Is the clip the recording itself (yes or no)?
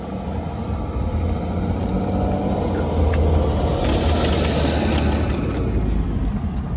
yes